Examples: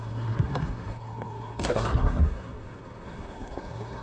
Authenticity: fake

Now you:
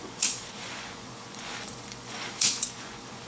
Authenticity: fake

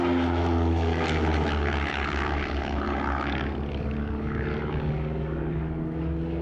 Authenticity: fake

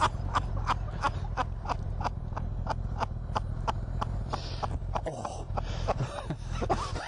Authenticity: fake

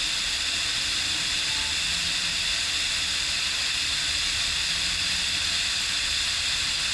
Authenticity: real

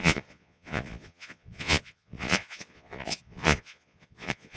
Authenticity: fake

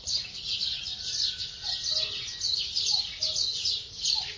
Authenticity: real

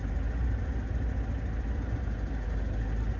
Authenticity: real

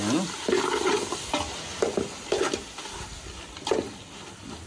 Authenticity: real